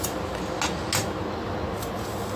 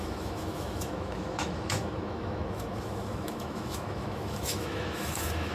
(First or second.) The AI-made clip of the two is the second